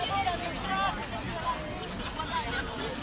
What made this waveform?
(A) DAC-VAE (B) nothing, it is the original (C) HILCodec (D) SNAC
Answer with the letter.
B